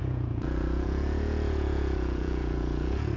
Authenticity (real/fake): fake